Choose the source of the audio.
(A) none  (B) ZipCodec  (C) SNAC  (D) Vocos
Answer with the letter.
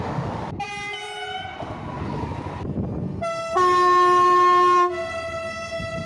A